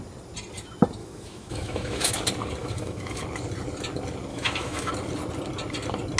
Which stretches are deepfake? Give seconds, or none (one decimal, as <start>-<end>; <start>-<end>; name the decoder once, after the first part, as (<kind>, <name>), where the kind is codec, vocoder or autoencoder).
1.0-2.1 (autoencoder, DAC-VAE); 2.6-3.2; 4.3-4.9